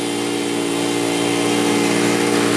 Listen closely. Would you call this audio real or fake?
real